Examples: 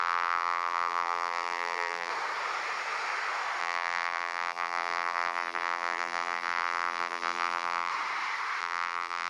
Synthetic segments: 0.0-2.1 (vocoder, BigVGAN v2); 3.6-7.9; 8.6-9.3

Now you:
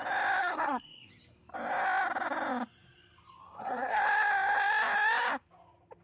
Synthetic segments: 0.4-1.1 (codec, SNAC); 3.4-4.0

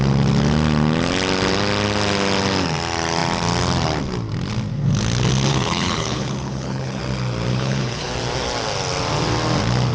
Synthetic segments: 5.5-7.0 (codec, HILCodec); 7.5-8.1

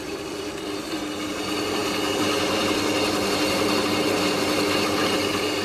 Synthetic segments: none

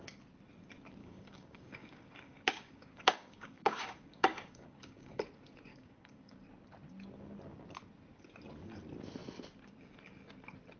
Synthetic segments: 1.0-5.2 (codec, DAC); 5.7-6.4

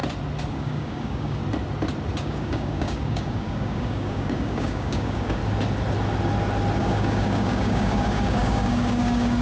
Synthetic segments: 0.5-1.4 (codec, DAC); 2.2-5.4; 6.8-9.4